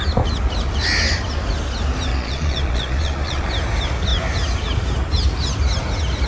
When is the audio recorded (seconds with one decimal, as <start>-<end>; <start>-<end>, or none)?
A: 0.0-2.1; 3.5-6.3